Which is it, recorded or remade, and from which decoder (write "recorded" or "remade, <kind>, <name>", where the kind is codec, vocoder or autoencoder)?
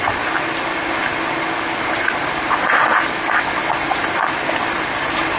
recorded